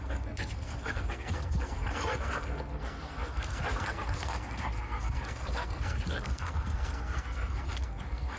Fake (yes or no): yes